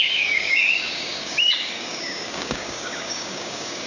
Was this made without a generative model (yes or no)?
no